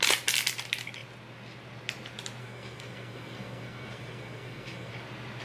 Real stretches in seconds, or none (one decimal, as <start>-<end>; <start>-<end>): 0.0-2.4; 4.9-5.4